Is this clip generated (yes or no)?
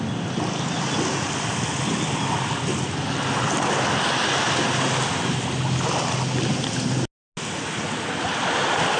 no